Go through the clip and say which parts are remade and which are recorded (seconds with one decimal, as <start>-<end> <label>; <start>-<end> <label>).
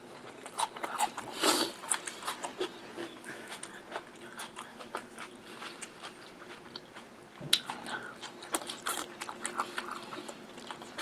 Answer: 0.0-3.0 recorded; 3.0-3.6 remade; 3.6-4.7 recorded; 4.7-5.3 remade; 5.3-11.0 recorded